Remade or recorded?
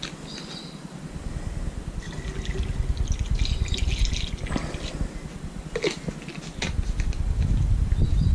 recorded